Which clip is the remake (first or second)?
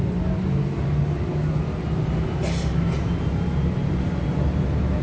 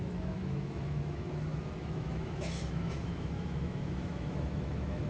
second